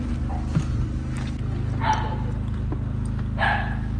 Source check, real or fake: real